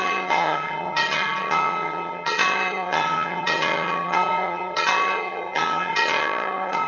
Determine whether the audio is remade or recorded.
remade